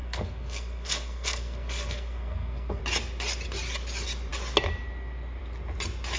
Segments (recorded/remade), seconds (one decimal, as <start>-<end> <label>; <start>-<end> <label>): 0.0-2.8 remade; 2.8-6.2 recorded